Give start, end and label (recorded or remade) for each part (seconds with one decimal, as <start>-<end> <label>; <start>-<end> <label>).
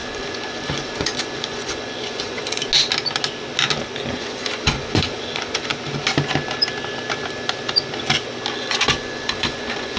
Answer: 0.0-2.6 remade; 2.6-4.1 recorded; 4.1-5.7 remade; 5.7-8.5 recorded; 8.5-10.0 remade